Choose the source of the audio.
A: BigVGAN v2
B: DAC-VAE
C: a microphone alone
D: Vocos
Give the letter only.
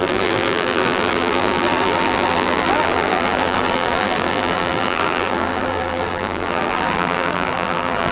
A